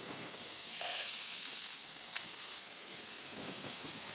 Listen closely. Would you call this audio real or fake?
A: fake